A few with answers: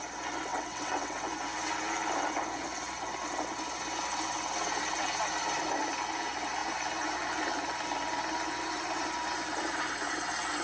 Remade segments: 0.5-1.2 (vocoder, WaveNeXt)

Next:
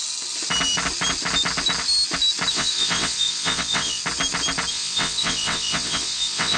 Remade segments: 2.5-4.0 (vocoder, WaveNeXt); 4.7-6.6

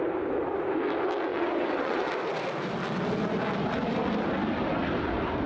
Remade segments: 1.3-2.1 (vocoder, WaveNeXt)

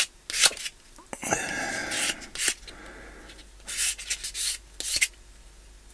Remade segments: none

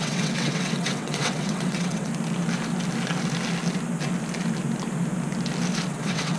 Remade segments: 0.0-2.1 (vocoder, WaveNeXt); 5.9-6.4